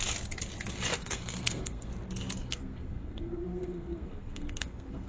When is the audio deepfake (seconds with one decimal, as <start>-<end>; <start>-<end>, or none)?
0.9-1.9; 2.4-5.1